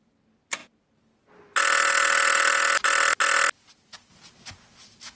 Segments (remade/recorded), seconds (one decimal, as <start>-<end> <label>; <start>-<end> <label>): 0.0-5.2 recorded